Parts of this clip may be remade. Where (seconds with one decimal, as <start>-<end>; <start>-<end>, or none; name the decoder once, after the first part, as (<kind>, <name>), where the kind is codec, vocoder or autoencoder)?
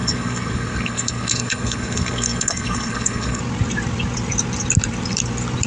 0.0-3.4 (codec, SNAC)